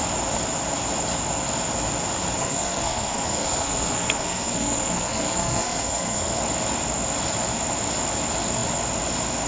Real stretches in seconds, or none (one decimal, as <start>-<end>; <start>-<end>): 0.0-2.4; 6.4-9.5